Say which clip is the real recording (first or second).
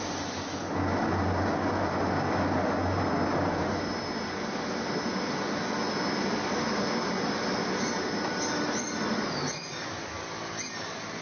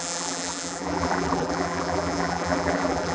first